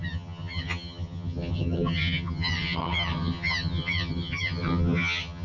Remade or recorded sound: remade